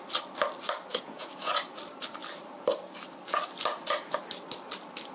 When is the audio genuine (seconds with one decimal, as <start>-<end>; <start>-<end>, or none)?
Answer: 0.0-0.9; 1.5-5.1